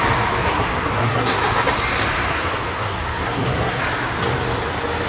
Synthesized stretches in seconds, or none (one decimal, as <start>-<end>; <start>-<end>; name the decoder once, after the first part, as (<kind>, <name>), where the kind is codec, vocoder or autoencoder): 0.4-1.4 (codec, SNAC); 2.3-3.8